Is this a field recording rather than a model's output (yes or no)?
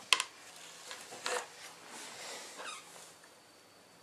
yes